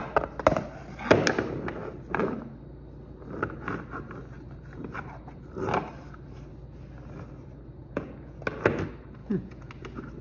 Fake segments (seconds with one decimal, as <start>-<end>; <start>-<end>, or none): 7.8-8.4; 9.2-9.7